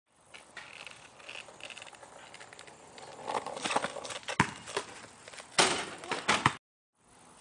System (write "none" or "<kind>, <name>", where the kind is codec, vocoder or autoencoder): none